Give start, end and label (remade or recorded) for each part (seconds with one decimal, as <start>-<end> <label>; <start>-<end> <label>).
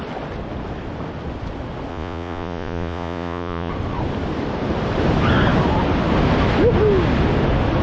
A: 0.0-1.9 recorded; 1.9-3.7 remade; 3.7-7.8 recorded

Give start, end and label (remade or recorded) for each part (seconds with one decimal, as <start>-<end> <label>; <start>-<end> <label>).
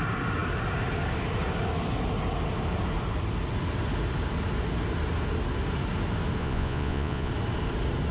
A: 0.0-6.4 recorded; 6.4-7.3 remade; 7.3-8.1 recorded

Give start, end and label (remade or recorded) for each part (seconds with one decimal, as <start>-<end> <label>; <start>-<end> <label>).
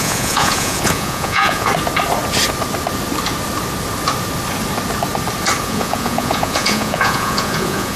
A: 0.0-1.7 remade; 1.7-5.6 recorded; 5.6-8.0 remade